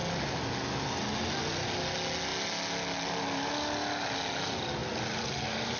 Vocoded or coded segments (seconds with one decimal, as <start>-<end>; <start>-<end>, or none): none